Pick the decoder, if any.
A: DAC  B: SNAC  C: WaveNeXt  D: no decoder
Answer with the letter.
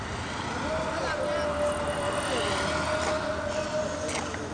D